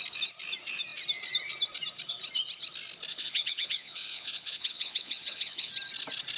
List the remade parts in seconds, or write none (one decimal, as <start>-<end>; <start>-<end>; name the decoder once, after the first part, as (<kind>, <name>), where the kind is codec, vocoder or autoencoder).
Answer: 3.1-5.7 (vocoder, Vocos)